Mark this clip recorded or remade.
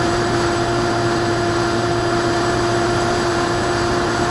remade